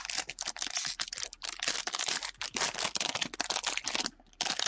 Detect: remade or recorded recorded